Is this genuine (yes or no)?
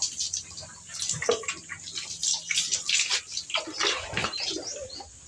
yes